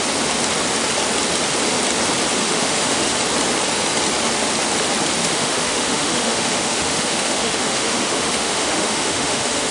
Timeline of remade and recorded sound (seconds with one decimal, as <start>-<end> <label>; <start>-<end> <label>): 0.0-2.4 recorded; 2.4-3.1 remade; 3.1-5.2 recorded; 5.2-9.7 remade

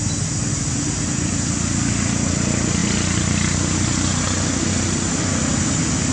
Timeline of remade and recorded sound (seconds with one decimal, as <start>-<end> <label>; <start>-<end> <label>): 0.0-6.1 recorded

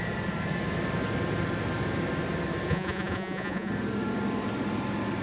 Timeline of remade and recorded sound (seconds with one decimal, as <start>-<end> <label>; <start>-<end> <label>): 0.0-2.7 recorded; 2.7-3.7 remade; 3.7-5.2 recorded

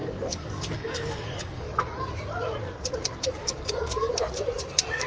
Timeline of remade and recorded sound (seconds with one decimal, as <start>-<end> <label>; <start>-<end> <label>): 0.0-1.7 remade; 1.7-3.4 recorded; 3.4-4.1 remade; 4.1-5.1 recorded

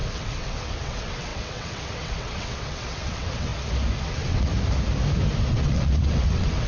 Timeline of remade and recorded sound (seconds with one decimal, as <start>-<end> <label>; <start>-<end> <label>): 0.0-3.5 remade; 3.5-4.0 recorded; 4.0-4.5 remade; 4.5-5.5 recorded; 5.5-6.7 remade

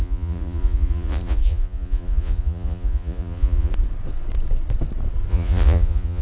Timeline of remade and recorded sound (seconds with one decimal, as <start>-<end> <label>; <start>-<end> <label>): 0.0-3.7 remade; 3.7-5.3 recorded; 5.3-6.2 remade